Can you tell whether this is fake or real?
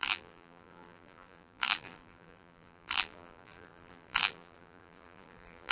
fake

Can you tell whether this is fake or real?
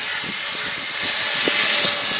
real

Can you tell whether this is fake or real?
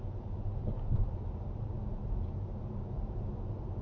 fake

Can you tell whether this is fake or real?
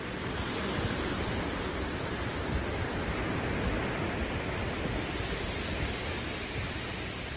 real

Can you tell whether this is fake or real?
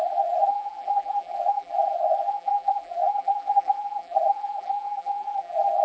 fake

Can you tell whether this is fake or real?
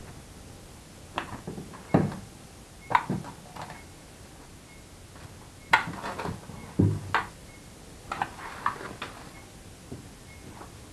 real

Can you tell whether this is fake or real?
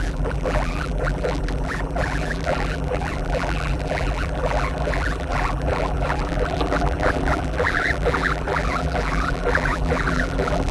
fake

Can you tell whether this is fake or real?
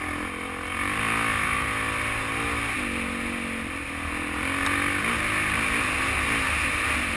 real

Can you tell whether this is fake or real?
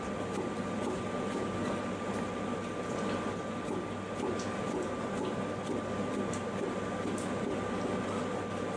real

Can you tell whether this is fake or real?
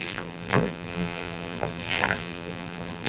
fake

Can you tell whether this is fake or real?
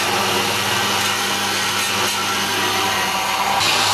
real